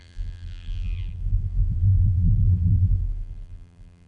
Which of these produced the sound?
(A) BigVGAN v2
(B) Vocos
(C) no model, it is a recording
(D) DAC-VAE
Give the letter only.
A